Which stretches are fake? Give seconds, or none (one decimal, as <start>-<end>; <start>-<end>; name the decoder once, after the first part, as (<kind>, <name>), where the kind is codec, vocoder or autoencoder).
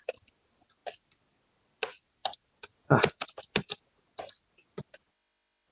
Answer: none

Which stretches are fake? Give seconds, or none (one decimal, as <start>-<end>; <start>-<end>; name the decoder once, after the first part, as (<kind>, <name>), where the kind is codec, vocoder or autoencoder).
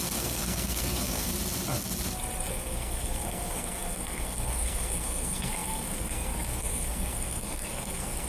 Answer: 0.0-1.3 (codec, SNAC); 2.5-8.3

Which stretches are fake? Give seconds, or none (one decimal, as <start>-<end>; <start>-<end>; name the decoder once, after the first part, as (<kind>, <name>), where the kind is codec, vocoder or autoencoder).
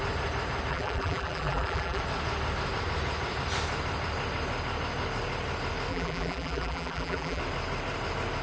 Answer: 0.7-2.0 (vocoder, BigVGAN v2); 5.9-7.4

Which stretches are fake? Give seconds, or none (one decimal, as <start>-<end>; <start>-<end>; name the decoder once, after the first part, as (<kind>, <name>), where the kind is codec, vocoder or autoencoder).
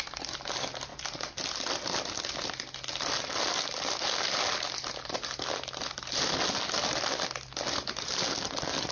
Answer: none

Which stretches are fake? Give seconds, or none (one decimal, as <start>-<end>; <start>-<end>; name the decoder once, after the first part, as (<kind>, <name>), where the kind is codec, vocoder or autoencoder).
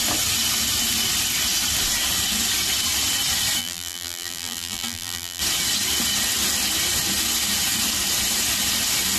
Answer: 3.6-5.4 (vocoder, BigVGAN v2)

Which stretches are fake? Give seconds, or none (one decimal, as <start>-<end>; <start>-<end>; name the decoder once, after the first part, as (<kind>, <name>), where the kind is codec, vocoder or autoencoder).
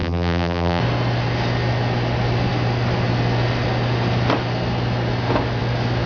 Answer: 0.0-0.8 (vocoder, BigVGAN v2)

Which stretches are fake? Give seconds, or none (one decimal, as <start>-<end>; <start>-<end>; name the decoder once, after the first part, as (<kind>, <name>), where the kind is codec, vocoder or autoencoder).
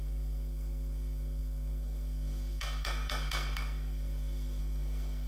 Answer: 0.0-5.3 (codec, SNAC)